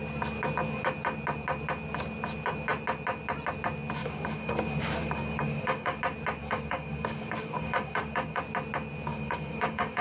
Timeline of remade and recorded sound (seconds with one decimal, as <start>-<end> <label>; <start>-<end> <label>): 0.0-4.0 recorded; 4.0-6.0 remade; 6.0-6.4 recorded; 6.4-8.4 remade; 8.4-9.1 recorded; 9.1-10.0 remade